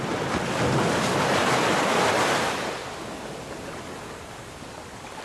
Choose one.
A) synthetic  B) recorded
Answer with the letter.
B